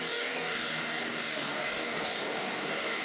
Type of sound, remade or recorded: remade